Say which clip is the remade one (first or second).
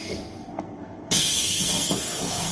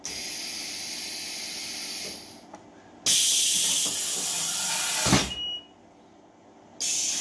first